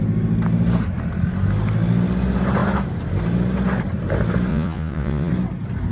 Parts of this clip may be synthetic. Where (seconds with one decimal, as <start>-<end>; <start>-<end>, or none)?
4.5-5.3